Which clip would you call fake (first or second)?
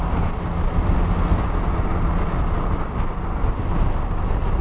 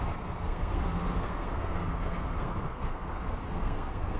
second